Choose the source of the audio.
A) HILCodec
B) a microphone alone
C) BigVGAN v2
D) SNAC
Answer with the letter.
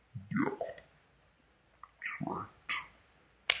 B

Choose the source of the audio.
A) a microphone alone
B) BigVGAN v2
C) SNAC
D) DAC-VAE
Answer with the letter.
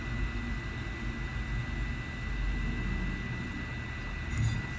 A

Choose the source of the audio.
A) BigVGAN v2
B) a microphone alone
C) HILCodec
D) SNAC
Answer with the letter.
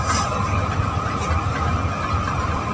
B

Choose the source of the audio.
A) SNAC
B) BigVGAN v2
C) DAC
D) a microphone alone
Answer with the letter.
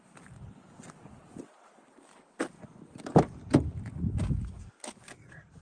D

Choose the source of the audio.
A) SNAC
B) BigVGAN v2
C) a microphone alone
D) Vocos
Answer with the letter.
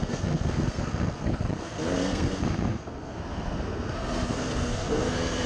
A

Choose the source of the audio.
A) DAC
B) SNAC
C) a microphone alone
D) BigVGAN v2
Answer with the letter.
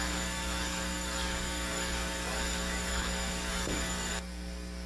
A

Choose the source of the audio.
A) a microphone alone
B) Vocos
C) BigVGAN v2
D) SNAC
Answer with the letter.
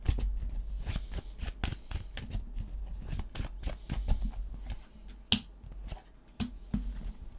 A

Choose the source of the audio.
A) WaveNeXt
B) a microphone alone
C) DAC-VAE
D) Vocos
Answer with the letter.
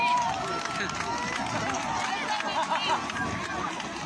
B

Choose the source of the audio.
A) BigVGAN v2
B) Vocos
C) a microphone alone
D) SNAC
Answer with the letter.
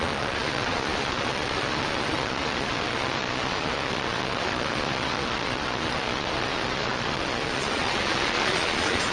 B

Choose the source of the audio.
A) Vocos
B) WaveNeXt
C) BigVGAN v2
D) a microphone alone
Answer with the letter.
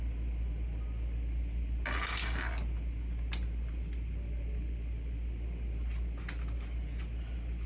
D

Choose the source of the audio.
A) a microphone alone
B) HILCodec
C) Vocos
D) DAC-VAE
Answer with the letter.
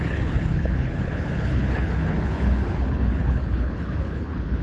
B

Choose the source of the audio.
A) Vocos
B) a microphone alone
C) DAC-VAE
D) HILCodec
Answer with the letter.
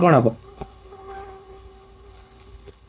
D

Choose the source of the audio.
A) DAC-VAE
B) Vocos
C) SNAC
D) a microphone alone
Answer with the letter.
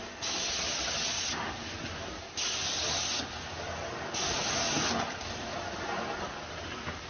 D